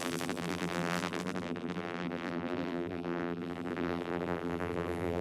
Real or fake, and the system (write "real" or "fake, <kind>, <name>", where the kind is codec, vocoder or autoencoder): fake, vocoder, BigVGAN v2